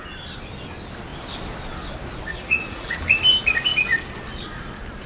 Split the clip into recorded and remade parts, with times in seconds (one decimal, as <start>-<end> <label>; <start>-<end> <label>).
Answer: 0.0-2.3 recorded; 2.3-3.0 remade; 3.0-5.1 recorded

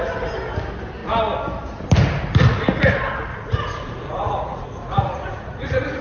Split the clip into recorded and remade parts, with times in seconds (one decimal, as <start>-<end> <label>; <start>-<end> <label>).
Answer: 0.0-3.3 recorded; 3.3-6.0 remade

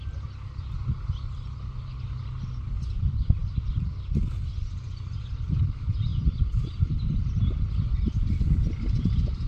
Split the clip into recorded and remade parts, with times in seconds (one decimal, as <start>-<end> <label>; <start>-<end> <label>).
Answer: 0.0-9.5 recorded

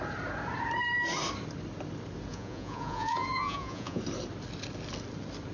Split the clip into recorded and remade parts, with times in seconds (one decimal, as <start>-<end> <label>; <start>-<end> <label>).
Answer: 0.0-2.3 recorded; 2.3-4.0 remade; 4.0-5.5 recorded

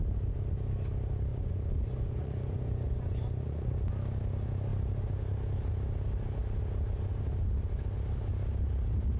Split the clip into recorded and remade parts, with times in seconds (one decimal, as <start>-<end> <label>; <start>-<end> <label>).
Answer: 0.0-1.3 recorded; 1.3-3.7 remade; 3.7-9.2 recorded

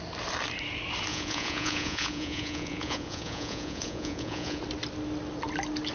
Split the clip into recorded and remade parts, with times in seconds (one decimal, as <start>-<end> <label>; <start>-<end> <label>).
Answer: 0.0-1.1 recorded; 1.1-4.6 remade; 4.6-5.9 recorded